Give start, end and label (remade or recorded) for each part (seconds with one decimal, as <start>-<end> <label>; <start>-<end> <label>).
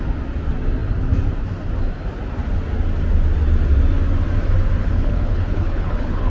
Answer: 0.0-4.8 recorded; 4.8-6.3 remade